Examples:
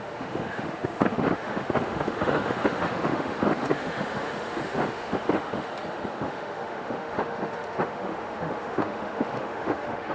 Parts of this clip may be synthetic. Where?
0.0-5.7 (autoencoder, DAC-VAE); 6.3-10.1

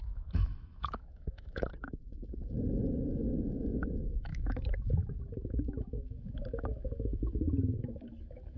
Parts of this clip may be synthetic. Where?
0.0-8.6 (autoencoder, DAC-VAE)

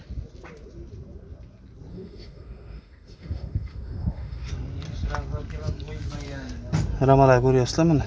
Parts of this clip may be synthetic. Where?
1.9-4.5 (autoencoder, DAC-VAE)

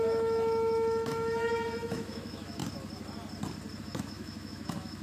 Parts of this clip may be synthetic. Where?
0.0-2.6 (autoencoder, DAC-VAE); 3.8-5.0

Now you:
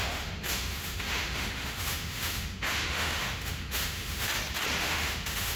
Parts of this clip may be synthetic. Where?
0.0-4.3 (autoencoder, DAC-VAE); 4.8-5.6

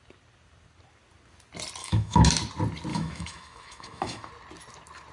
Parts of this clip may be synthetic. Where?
1.8-2.3 (autoencoder, DAC-VAE); 2.9-4.3

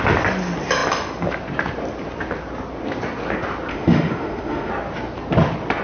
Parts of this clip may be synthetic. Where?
3.7-4.7 (autoencoder, DAC-VAE)

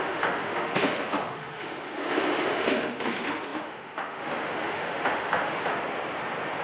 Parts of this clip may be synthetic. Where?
0.0-5.7 (autoencoder, DAC-VAE)